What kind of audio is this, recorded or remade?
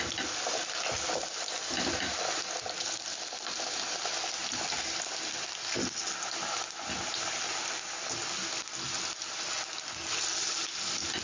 recorded